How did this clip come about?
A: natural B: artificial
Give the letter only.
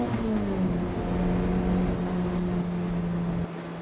A